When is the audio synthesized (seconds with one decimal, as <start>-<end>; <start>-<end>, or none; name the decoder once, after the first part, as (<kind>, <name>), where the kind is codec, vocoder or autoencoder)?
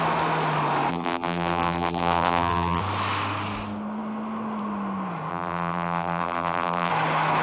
0.9-2.8 (vocoder, BigVGAN v2); 5.3-6.9